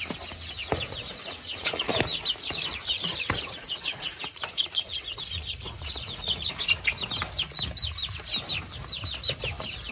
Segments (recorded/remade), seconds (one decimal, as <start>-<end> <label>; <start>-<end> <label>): 0.0-0.6 recorded; 0.6-1.9 remade; 1.9-2.8 recorded; 2.8-6.6 remade; 6.6-9.9 recorded